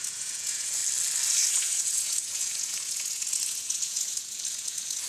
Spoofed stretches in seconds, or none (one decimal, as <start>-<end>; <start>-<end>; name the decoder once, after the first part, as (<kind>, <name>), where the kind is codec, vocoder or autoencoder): 0.0-0.8 (vocoder, Vocos); 1.5-5.1